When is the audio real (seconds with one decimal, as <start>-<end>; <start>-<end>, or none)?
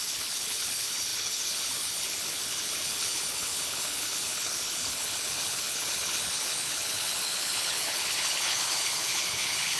none